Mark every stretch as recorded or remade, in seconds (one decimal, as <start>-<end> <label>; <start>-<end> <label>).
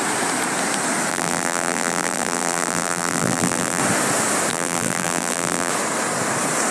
0.0-1.1 recorded; 1.1-3.8 remade; 3.8-4.5 recorded; 4.5-5.7 remade; 5.7-6.7 recorded